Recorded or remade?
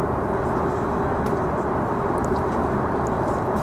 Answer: recorded